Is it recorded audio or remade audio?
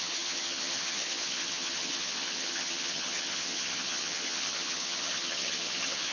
remade